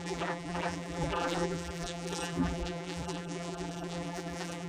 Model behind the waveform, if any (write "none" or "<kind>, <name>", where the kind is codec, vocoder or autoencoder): vocoder, BigVGAN v2